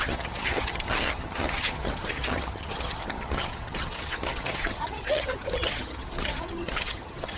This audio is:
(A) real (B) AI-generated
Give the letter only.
B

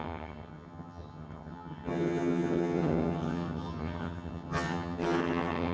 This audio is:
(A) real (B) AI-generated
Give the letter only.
B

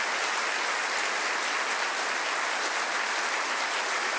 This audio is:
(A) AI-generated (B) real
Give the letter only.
B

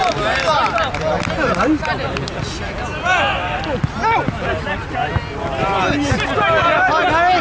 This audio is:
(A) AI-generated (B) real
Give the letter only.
B